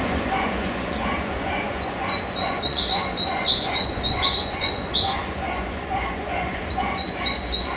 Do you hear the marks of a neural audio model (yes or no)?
yes